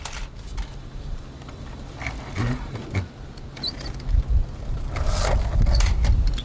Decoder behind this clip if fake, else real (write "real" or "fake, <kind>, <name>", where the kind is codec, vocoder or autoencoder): real